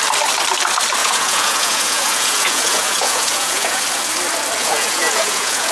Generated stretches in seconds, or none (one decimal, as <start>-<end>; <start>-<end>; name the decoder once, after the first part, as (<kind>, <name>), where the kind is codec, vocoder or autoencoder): 1.0-3.8 (vocoder, Vocos); 4.6-5.7